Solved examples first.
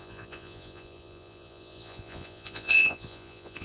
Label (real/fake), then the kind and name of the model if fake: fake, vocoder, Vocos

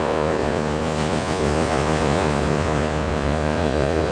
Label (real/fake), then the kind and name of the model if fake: fake, vocoder, Vocos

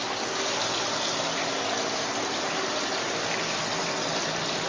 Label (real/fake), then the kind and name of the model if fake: real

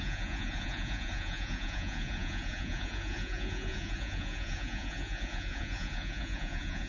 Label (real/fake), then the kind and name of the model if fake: fake, vocoder, Vocos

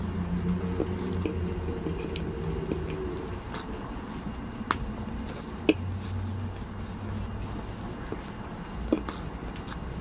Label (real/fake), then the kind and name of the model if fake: real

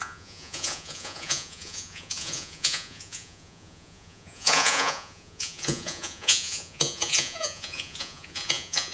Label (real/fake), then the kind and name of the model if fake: fake, vocoder, Vocos